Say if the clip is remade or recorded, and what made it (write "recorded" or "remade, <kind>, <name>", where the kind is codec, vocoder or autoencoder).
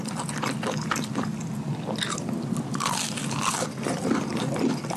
recorded